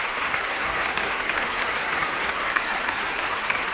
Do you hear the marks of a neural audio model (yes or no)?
yes